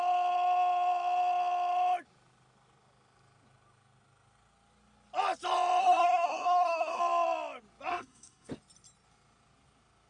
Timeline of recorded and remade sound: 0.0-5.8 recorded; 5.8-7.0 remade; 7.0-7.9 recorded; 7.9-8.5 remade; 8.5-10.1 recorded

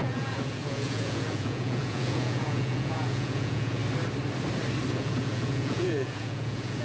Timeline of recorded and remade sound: 0.0-3.8 remade; 3.8-4.9 recorded; 4.9-6.8 remade

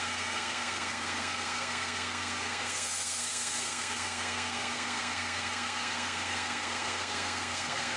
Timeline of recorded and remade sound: 0.0-8.0 remade

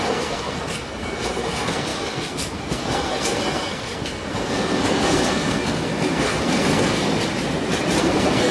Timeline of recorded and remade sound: 0.0-7.1 remade; 7.1-8.0 recorded; 8.0-8.5 remade